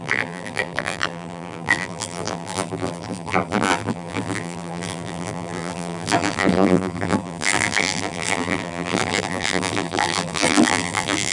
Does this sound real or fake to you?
fake